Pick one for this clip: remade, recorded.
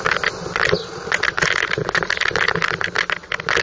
recorded